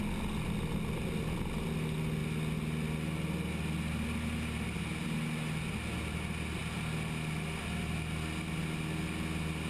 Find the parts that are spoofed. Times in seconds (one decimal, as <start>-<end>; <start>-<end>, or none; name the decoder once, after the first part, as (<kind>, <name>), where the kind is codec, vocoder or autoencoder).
none